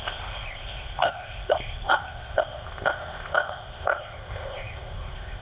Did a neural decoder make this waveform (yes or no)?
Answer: yes